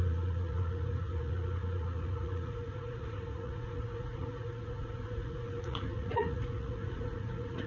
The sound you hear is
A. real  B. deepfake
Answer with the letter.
B